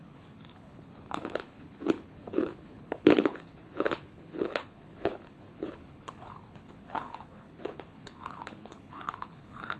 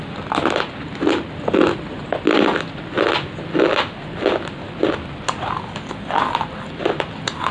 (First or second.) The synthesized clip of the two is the first